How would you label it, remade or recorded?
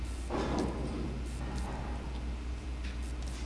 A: remade